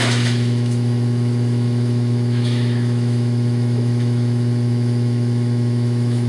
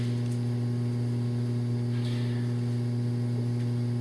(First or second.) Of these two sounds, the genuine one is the second